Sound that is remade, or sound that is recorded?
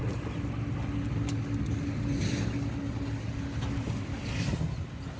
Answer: recorded